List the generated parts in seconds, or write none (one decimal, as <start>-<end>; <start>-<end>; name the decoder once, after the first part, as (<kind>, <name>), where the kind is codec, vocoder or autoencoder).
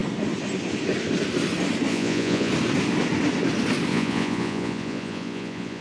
1.9-2.5 (vocoder, Vocos); 3.9-5.8